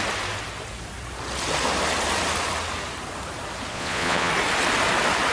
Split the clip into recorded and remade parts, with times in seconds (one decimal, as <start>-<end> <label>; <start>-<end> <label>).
0.0-3.7 recorded; 3.7-4.3 remade; 4.3-5.3 recorded